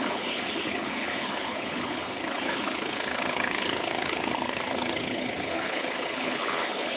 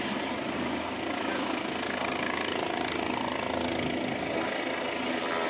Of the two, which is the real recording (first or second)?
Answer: second